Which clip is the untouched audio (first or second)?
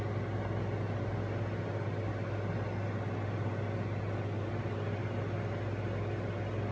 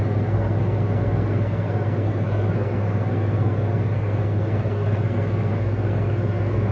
first